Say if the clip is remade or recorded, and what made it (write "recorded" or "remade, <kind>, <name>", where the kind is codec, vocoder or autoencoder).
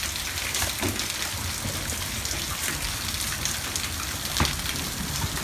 recorded